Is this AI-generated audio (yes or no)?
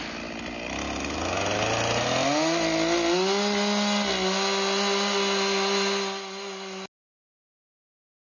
no